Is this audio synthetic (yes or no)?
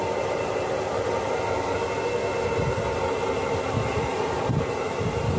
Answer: no